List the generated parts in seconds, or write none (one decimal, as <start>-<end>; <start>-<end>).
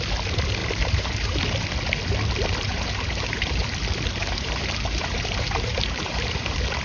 0.6-1.4; 2.7-3.6; 4.2-6.8